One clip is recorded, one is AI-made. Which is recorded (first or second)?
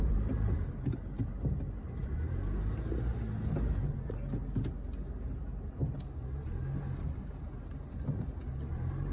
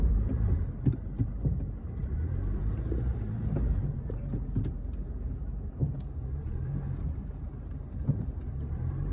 first